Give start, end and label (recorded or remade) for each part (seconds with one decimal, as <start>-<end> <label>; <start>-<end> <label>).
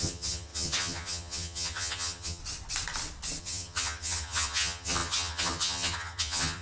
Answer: 0.0-2.4 remade; 2.4-3.4 recorded; 3.4-6.6 remade